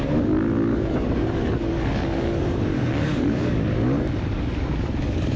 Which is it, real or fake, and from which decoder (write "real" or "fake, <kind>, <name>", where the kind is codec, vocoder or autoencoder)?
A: fake, codec, DAC